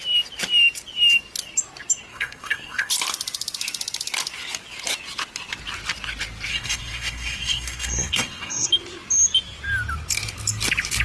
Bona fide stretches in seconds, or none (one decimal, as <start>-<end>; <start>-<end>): 0.0-2.1; 2.9-6.5; 8.7-11.0